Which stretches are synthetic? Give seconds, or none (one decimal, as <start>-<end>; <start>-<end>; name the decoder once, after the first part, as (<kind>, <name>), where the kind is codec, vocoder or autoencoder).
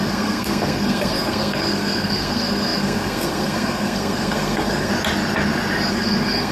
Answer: 0.0-4.9 (codec, SNAC); 5.9-6.5